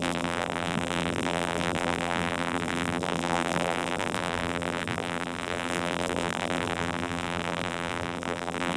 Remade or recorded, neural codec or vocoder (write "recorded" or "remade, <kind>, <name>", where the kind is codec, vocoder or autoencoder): remade, vocoder, BigVGAN v2